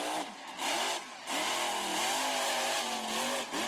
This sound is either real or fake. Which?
real